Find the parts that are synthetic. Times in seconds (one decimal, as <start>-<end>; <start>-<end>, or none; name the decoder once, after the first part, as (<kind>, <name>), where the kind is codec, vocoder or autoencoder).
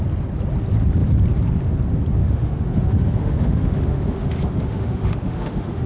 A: 2.2-5.9 (autoencoder, DAC-VAE)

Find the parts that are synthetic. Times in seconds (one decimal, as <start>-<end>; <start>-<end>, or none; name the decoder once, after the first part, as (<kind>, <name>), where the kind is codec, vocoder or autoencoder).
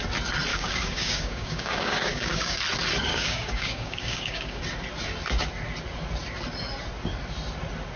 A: 0.5-2.6 (codec, DAC); 3.1-4.6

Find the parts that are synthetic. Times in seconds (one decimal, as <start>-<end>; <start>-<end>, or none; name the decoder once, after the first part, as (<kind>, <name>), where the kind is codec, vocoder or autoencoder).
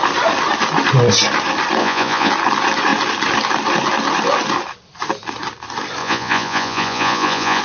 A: 1.8-2.3 (vocoder, Vocos); 6.0-7.6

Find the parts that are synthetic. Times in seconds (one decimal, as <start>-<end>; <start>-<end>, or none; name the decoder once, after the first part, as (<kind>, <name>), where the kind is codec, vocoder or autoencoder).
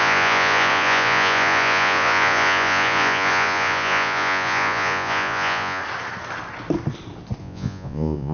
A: 0.0-5.8 (vocoder, Vocos); 7.4-8.3